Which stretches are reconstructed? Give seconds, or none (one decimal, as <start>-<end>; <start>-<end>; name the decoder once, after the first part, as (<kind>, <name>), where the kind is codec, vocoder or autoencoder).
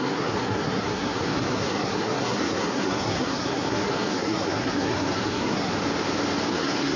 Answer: 0.0-5.7 (codec, SNAC); 6.5-7.0